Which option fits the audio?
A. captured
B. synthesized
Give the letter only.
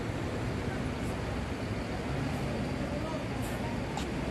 A